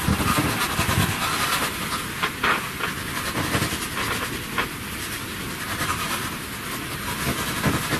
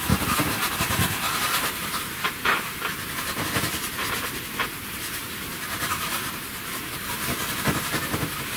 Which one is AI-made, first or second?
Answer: second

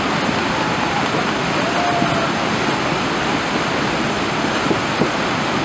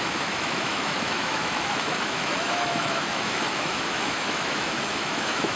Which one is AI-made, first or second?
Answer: second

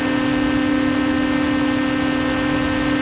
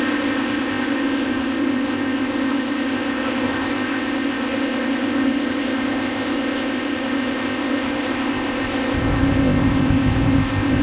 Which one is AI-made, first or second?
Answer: second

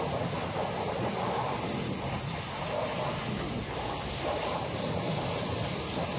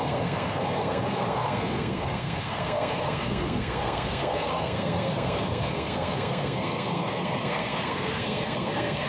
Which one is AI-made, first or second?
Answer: second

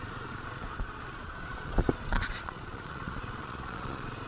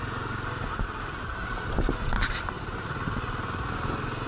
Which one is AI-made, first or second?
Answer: first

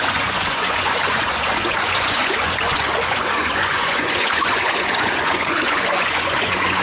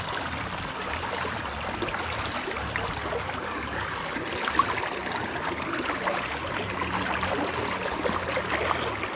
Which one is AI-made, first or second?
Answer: first